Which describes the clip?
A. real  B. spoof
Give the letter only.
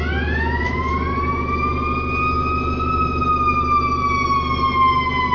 A